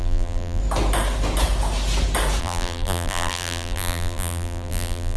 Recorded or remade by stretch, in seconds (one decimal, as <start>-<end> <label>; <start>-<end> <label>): 0.0-0.6 remade; 0.6-2.4 recorded; 2.4-5.2 remade